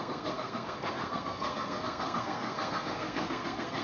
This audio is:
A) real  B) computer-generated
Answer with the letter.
B